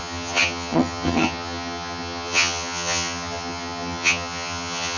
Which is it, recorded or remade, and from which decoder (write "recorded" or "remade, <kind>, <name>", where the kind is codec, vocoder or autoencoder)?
remade, vocoder, HiFi-GAN